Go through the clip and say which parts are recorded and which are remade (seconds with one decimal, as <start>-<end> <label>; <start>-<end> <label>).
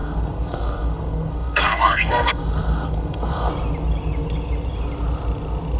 0.0-3.5 remade; 3.5-5.8 recorded